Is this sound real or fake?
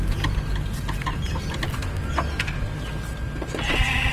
real